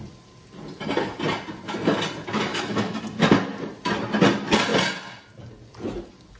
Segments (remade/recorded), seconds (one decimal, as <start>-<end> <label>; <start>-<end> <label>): 0.0-2.5 recorded; 2.5-3.0 remade; 3.0-6.4 recorded